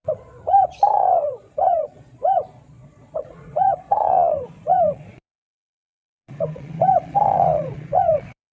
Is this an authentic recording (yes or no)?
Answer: no